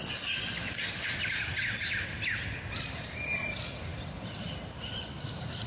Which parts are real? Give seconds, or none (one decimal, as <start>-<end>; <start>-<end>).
0.0-3.9